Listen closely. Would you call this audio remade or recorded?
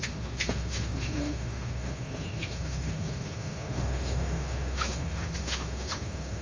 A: remade